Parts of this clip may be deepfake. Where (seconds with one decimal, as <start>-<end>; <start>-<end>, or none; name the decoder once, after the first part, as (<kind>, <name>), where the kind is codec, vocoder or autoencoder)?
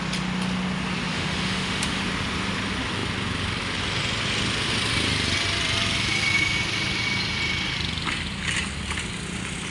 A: 1.1-2.0 (autoencoder, DAC-VAE)